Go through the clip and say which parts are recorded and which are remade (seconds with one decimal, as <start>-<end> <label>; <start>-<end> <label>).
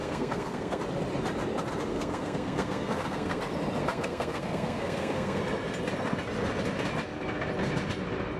0.0-0.8 remade; 0.8-1.9 recorded; 1.9-3.4 remade; 3.4-3.8 recorded; 3.8-5.4 remade; 5.4-8.4 recorded